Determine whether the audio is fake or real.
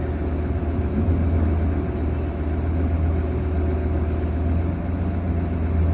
real